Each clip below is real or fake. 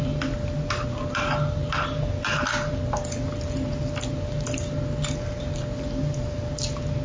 real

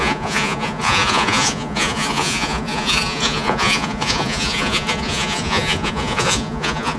fake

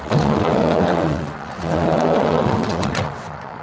fake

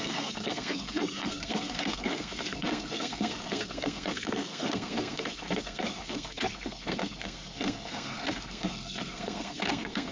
fake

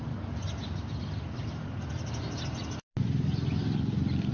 real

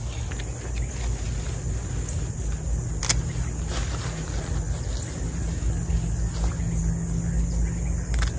real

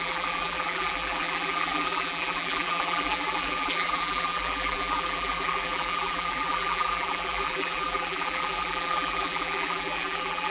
fake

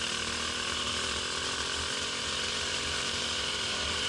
fake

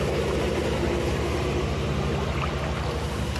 real